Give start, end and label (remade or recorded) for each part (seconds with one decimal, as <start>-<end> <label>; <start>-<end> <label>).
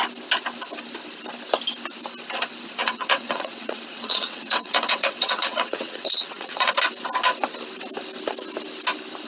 0.0-2.8 recorded; 2.8-6.7 remade; 6.7-9.3 recorded